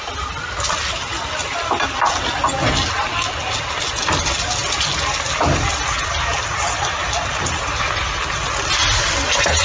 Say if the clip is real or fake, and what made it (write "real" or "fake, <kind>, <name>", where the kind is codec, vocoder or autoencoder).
real